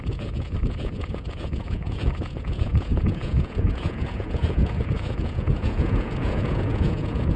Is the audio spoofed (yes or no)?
yes